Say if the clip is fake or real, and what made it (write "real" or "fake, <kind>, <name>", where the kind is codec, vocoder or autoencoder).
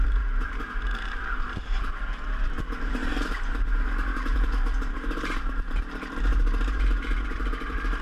fake, vocoder, BigVGAN v2